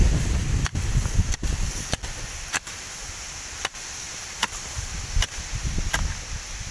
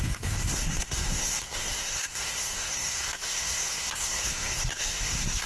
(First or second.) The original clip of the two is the first